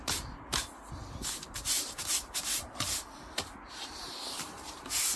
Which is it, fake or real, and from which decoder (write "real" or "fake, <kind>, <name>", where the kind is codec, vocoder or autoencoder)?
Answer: real